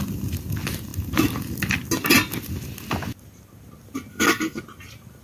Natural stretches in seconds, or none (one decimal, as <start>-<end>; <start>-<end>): 0.0-4.1; 4.6-5.2